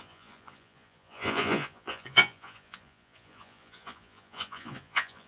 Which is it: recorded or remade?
remade